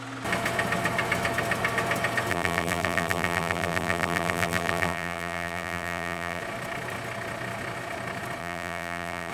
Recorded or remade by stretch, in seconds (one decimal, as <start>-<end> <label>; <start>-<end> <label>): 0.0-2.3 recorded; 2.3-6.4 remade; 6.4-8.4 recorded; 8.4-9.3 remade

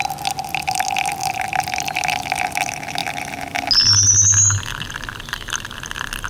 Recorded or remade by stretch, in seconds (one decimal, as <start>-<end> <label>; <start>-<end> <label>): 0.0-6.3 recorded

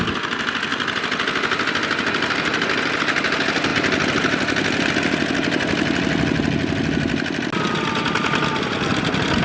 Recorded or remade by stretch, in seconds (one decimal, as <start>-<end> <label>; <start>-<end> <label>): 0.0-9.4 recorded

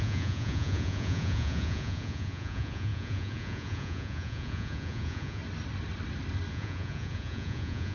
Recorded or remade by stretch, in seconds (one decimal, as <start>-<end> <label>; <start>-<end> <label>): 0.0-5.4 remade; 5.4-6.5 recorded; 6.5-7.9 remade

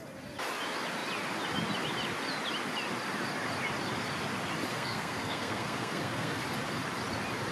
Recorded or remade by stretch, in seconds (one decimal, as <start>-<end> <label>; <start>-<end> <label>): 0.0-4.7 recorded; 4.7-6.4 remade; 6.4-7.5 recorded

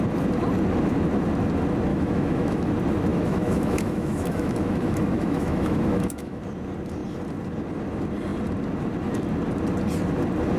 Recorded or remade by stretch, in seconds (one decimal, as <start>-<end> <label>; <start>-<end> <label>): 0.0-1.9 recorded; 1.9-2.7 remade; 2.7-3.1 recorded; 3.1-6.4 remade; 6.4-10.6 recorded

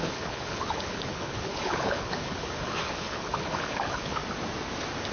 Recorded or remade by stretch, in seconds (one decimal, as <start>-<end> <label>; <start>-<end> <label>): 0.0-4.2 remade; 4.2-5.1 recorded